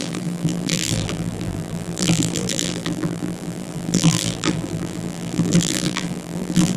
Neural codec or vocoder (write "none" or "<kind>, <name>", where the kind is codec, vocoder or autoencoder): vocoder, BigVGAN v2